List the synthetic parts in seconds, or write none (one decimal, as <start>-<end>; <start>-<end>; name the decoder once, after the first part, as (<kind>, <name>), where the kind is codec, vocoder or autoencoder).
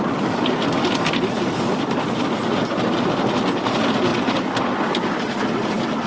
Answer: none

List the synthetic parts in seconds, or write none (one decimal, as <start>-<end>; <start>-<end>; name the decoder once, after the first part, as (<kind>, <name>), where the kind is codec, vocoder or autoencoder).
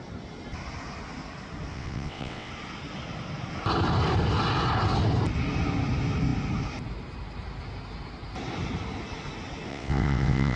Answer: 1.7-2.5 (vocoder, WaveNeXt); 9.7-10.6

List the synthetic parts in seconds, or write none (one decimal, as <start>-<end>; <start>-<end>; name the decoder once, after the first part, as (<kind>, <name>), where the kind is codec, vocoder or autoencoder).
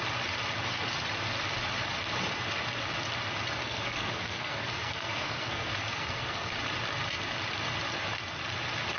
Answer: 3.6-6.5 (codec, SNAC)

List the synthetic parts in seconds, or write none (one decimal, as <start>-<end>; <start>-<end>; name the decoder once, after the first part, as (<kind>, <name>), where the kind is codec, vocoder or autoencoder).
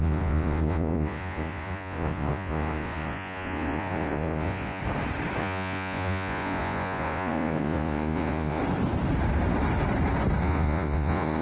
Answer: 0.0-4.8 (vocoder, Vocos); 5.4-8.6; 10.4-11.4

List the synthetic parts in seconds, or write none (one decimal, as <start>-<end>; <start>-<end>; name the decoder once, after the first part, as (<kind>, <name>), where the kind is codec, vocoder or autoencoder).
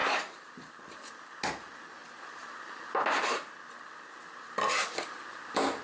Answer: none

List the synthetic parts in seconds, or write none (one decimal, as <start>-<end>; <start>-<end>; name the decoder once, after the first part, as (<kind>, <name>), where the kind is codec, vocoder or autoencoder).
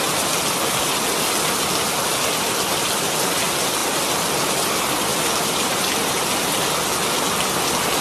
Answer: 5.1-5.7 (vocoder, BigVGAN v2)